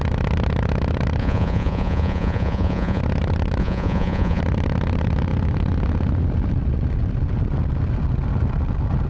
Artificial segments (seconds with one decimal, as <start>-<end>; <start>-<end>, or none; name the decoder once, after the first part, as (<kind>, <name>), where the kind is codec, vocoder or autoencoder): 1.2-3.0 (vocoder, Vocos); 3.6-4.4